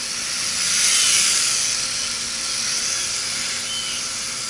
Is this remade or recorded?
recorded